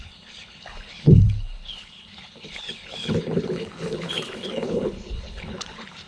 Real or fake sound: fake